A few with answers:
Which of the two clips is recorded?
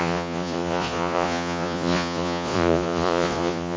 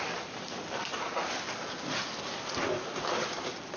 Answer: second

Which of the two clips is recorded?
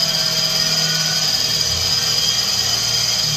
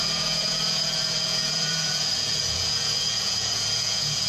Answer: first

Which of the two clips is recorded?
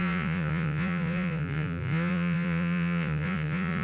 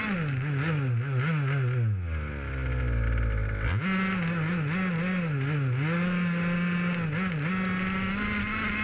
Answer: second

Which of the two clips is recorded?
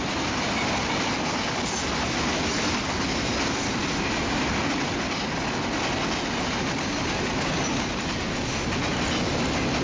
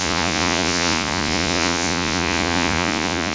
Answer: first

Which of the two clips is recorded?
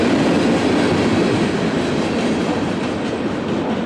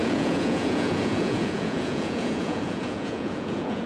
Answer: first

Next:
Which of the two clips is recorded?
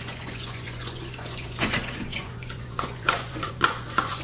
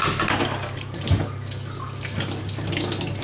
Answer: second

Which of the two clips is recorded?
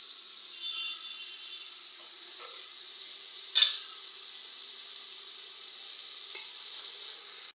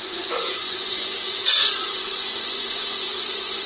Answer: first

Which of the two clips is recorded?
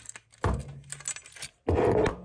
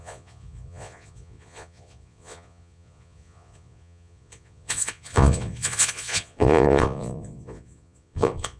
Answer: first